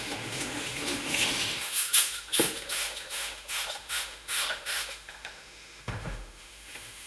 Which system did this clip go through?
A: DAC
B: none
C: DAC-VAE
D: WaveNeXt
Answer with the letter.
C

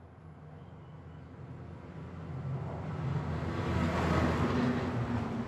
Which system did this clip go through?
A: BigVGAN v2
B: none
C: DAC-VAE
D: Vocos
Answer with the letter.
B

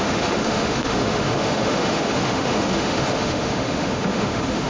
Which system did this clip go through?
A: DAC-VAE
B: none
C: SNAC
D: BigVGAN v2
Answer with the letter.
A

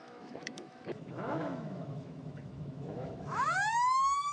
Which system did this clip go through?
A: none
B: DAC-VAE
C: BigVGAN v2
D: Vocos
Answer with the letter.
B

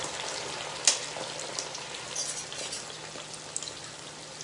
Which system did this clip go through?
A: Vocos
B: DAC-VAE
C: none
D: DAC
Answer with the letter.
C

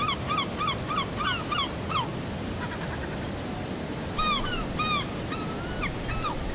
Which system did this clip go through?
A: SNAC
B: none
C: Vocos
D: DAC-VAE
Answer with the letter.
B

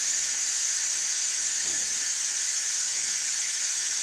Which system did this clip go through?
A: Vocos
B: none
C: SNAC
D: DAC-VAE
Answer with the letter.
D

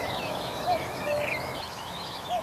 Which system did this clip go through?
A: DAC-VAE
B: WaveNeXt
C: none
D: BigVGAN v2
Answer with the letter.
A